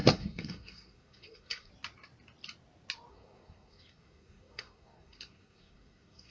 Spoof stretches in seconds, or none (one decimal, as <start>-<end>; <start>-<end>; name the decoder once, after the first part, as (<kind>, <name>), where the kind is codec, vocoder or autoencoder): 0.0-1.7 (codec, SNAC); 3.1-6.3